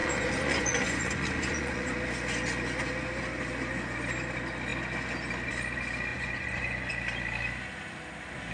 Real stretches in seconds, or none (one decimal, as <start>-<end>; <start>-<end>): 1.9-6.1; 6.9-8.5